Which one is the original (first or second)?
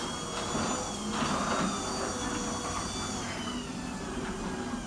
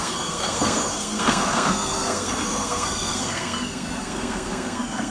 first